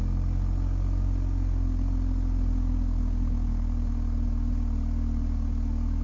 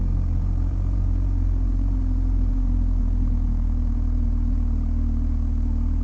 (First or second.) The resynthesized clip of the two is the second